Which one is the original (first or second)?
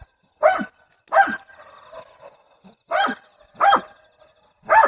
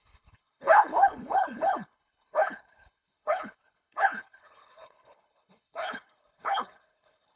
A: first